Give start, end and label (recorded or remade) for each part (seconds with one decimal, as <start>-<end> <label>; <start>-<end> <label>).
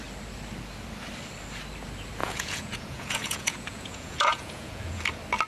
0.0-2.2 recorded; 2.2-5.0 remade; 5.0-5.5 recorded